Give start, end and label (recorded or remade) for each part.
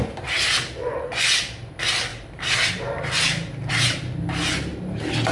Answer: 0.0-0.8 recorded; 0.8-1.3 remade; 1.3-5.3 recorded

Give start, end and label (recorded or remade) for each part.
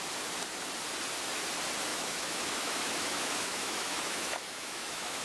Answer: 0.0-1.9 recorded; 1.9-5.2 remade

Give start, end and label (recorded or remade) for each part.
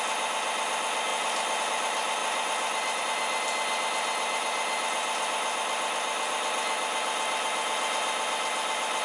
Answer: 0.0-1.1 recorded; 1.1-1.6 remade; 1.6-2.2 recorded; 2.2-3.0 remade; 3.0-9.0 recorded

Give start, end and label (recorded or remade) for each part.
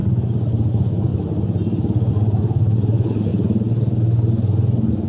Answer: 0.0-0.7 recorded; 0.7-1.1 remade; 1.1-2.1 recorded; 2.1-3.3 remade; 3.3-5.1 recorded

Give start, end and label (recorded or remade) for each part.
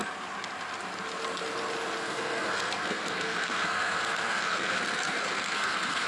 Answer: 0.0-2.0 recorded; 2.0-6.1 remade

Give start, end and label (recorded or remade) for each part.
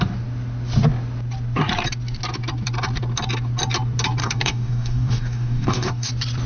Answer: 0.0-4.2 recorded; 4.2-6.1 remade; 6.1-6.5 recorded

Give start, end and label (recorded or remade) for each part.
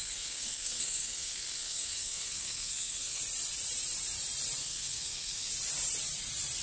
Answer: 0.0-3.2 remade; 3.2-4.6 recorded; 4.6-5.5 remade; 5.5-6.6 recorded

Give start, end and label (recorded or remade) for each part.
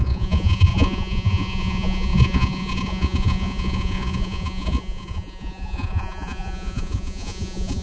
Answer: 0.0-7.8 remade